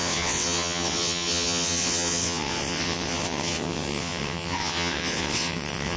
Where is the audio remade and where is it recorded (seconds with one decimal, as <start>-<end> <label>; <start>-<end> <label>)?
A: 0.0-6.0 remade